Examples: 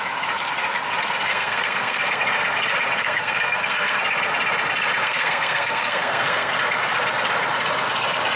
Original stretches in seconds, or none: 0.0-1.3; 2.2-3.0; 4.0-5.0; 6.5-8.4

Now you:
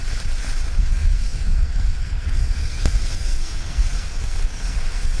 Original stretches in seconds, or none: 0.0-0.8

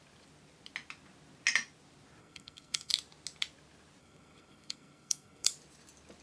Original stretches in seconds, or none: 0.0-2.2; 2.9-4.0; 5.5-6.2